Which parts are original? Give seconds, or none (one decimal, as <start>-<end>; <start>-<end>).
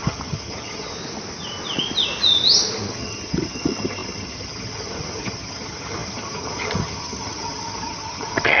0.9-2.9